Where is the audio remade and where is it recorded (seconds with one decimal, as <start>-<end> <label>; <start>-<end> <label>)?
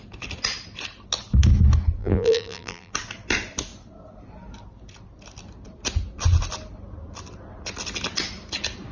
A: 0.0-2.0 recorded; 2.0-2.9 remade; 2.9-8.9 recorded